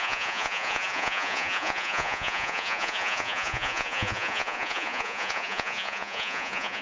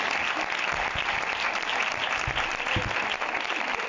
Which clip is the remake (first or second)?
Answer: first